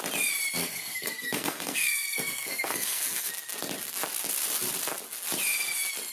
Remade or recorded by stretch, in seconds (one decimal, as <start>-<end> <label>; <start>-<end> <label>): 0.0-0.6 recorded; 0.6-3.3 remade; 3.3-6.1 recorded